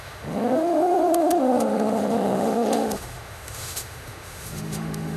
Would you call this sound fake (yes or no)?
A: yes